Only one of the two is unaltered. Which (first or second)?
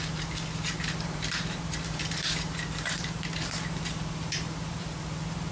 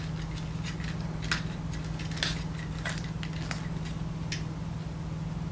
second